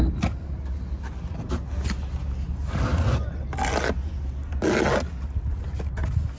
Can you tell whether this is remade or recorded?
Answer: recorded